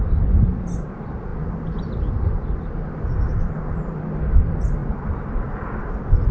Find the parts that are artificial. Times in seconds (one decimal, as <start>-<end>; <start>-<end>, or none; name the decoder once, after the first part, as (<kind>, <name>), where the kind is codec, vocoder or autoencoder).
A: none